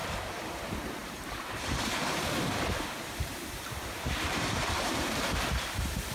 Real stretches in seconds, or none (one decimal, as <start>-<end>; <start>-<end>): 0.0-0.5